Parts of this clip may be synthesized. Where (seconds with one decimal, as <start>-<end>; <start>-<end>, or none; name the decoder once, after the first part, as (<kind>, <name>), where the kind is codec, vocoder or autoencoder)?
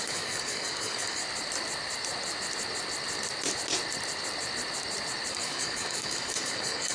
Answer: 0.0-1.2 (codec, DAC); 5.3-6.9